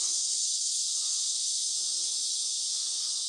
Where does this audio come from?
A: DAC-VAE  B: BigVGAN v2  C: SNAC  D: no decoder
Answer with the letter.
A